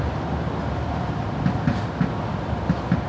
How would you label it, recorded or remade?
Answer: recorded